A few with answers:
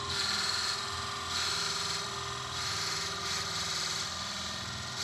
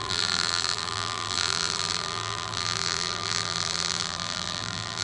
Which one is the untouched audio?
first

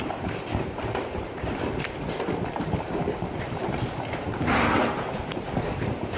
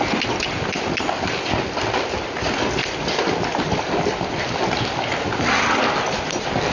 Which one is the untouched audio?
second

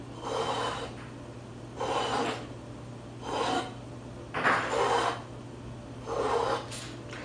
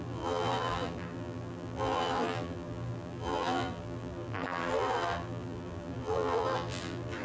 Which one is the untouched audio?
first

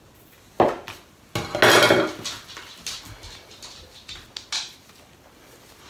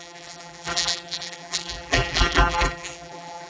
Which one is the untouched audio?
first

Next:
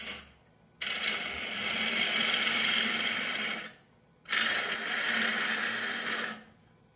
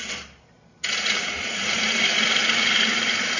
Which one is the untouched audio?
first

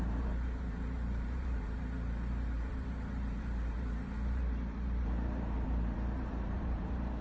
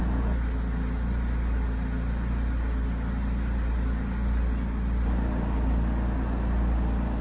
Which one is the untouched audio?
second